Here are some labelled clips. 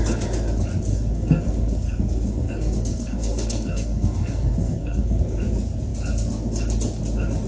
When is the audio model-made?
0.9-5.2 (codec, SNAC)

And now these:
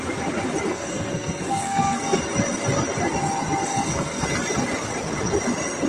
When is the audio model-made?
0.7-2.2 (codec, SNAC); 3.6-4.2

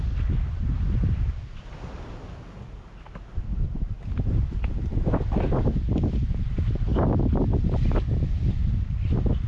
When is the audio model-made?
none

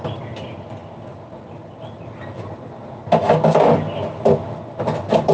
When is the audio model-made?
none

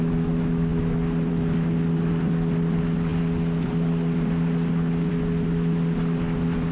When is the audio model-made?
none

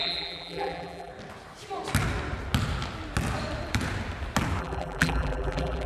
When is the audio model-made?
0.0-1.1 (vocoder, BigVGAN v2); 4.6-5.9

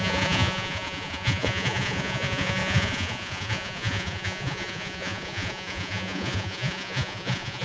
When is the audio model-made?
0.0-7.6 (vocoder, Vocos)

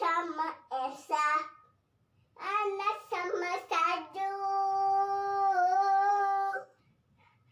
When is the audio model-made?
6.1-6.8 (codec, SNAC)